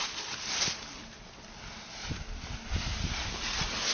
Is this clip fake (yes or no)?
no